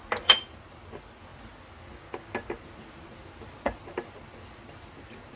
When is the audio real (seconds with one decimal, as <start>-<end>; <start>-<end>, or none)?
0.0-5.4